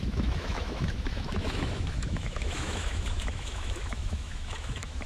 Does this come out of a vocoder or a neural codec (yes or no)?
yes